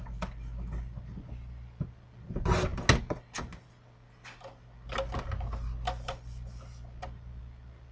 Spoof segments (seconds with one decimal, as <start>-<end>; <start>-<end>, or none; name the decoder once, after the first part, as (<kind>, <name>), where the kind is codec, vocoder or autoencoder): none